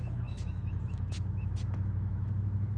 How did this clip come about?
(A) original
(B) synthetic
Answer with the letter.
B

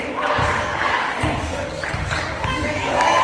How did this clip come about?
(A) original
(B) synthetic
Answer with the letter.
B